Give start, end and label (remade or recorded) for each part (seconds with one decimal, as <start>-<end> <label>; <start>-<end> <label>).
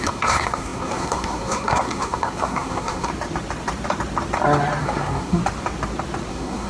0.0-3.1 remade; 3.1-4.8 recorded; 4.8-5.4 remade; 5.4-6.3 recorded; 6.3-6.7 remade